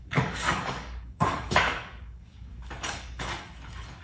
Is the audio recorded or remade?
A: remade